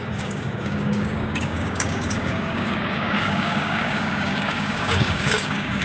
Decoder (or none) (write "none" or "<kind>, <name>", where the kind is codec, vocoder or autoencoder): codec, DAC